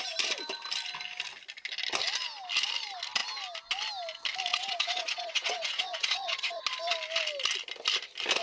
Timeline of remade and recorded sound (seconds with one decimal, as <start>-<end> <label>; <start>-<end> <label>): 0.0-4.5 recorded; 4.5-6.6 remade; 6.6-8.4 recorded